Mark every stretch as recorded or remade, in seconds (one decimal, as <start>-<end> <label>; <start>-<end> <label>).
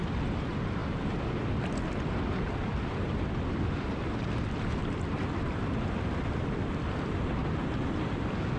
0.0-0.8 remade; 0.8-3.7 recorded; 3.7-8.6 remade